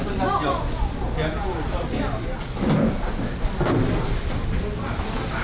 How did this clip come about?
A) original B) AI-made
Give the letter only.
A